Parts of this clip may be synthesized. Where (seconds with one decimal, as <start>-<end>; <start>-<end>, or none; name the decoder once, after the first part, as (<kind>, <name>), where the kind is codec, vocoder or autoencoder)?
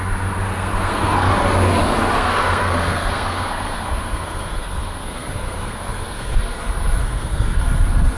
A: 0.5-1.3 (codec, SNAC); 2.2-6.4; 7.0-7.6